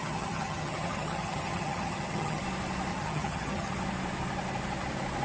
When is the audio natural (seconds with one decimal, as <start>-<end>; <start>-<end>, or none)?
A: 2.4-2.9; 3.7-5.2